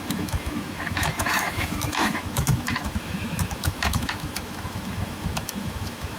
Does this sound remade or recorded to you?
remade